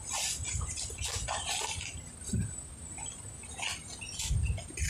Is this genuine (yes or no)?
yes